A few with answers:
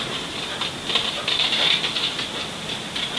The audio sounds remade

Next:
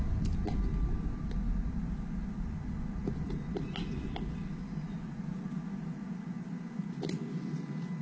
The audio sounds recorded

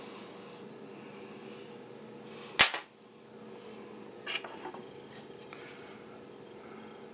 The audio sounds recorded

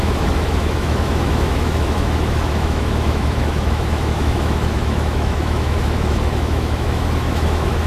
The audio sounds remade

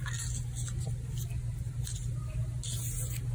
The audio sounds recorded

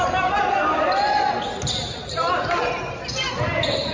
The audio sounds recorded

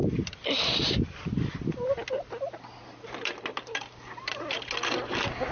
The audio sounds recorded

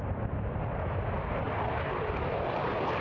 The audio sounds recorded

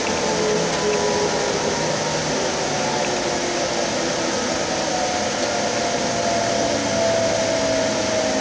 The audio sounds recorded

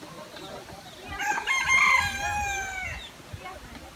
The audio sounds recorded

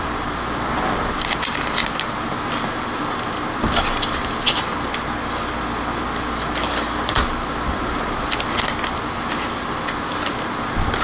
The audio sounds recorded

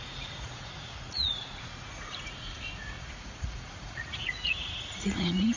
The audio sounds remade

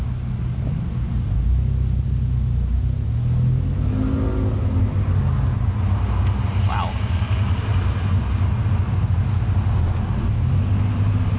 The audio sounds recorded